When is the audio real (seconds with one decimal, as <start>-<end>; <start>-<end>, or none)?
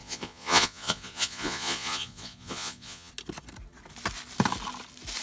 3.1-5.2